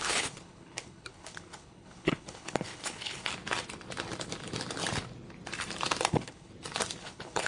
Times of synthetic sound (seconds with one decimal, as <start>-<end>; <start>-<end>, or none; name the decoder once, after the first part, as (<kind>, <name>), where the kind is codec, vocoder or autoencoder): 0.0-3.3 (codec, HILCodec); 6.1-6.5; 7.0-7.5